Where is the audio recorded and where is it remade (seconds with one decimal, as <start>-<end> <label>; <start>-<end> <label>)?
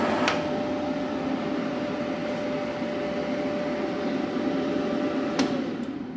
0.0-6.2 recorded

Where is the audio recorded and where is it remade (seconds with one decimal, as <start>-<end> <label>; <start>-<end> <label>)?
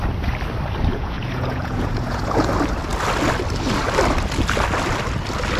0.0-0.9 recorded; 0.9-2.5 remade; 2.5-5.6 recorded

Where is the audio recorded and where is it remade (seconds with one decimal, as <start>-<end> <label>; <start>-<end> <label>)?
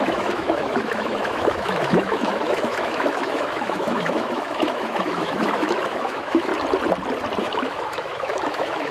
0.0-6.5 remade; 6.5-7.4 recorded; 7.4-8.9 remade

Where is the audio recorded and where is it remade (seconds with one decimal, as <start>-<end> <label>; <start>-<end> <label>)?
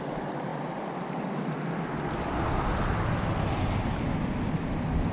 0.0-5.1 recorded